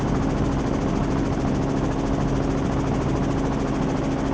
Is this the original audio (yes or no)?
yes